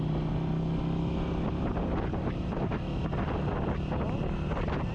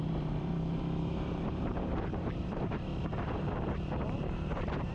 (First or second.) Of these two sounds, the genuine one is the first